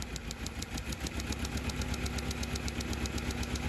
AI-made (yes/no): no